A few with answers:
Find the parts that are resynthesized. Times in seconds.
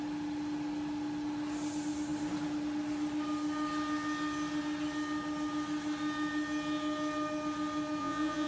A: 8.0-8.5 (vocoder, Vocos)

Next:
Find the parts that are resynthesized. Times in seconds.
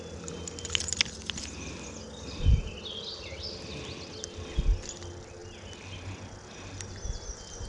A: none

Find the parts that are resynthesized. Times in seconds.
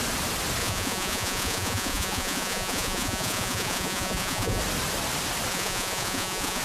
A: 0.6-4.6 (vocoder, Vocos); 5.5-6.6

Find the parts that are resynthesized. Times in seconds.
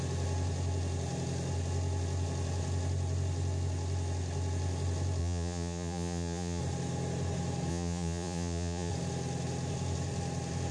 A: 5.2-6.6 (vocoder, Vocos); 7.7-8.9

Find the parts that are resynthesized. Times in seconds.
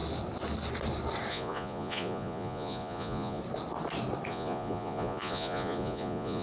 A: 1.3-3.4 (vocoder, Vocos); 4.3-6.4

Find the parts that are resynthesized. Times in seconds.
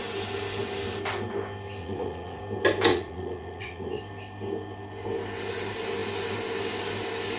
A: 1.8-2.4 (vocoder, Vocos); 2.9-4.0